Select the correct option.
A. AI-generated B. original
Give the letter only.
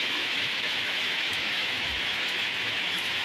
A